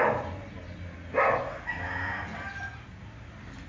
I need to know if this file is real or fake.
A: real